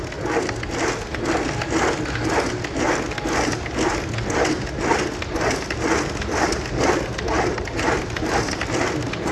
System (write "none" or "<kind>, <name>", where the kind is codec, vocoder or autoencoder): none